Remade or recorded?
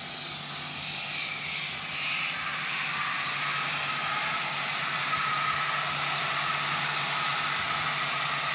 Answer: recorded